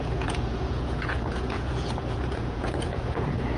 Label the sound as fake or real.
fake